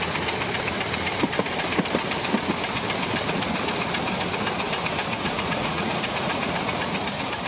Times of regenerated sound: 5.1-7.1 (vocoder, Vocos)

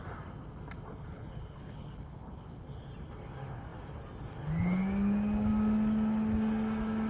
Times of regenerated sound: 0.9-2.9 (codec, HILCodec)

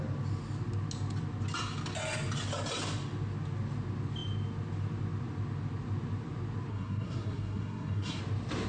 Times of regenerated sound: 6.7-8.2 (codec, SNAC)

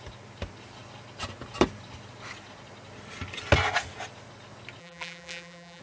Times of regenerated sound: 4.8-5.8 (vocoder, BigVGAN v2)

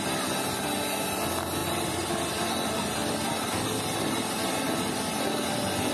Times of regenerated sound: 1.6-5.1 (vocoder, BigVGAN v2)